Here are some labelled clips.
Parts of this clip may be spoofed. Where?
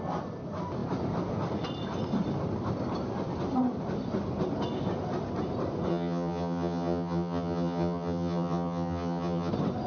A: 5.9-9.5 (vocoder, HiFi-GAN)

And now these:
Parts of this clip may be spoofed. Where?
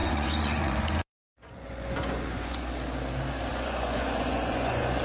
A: 0.0-2.7 (vocoder, Vocos); 3.5-5.0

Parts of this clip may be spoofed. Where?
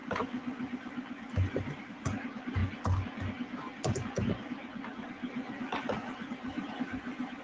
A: 1.5-2.6 (vocoder, BigVGAN v2); 6.3-7.4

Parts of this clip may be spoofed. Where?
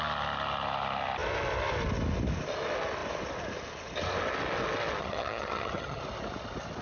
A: 5.0-6.0 (vocoder, HiFi-GAN)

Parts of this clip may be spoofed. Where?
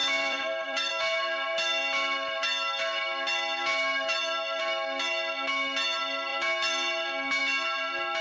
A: 0.0-0.9 (vocoder, BigVGAN v2)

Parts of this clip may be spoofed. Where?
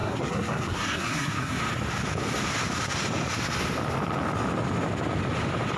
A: 0.0-1.6 (codec, SNAC)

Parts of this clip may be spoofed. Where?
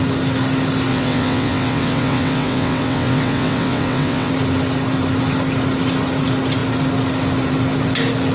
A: 0.9-4.3 (vocoder, WaveNeXt)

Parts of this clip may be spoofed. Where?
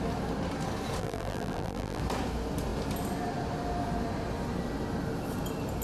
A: 1.0-2.0 (vocoder, BigVGAN v2)